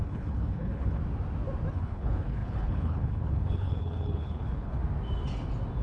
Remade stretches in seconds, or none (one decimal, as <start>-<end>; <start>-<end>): 0.0-1.0; 1.7-4.8